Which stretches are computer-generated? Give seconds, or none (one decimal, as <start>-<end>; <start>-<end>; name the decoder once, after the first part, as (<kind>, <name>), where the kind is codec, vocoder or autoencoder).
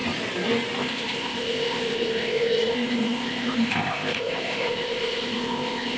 0.8-6.0 (codec, ZipCodec)